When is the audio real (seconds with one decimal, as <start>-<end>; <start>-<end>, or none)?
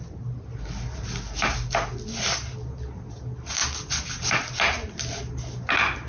0.0-6.1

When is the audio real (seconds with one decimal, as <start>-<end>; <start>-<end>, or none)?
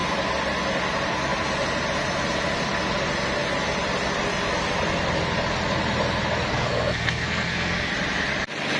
0.0-6.5; 7.9-8.8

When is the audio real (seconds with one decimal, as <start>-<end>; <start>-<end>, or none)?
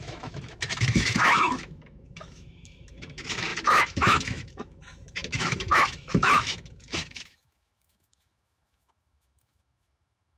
none